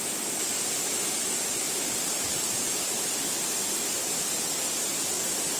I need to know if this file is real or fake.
real